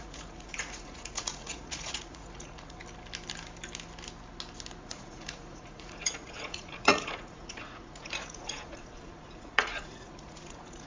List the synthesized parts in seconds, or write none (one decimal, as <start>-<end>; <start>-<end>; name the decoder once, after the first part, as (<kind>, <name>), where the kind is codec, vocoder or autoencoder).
0.0-2.8 (vocoder, Vocos); 4.8-10.9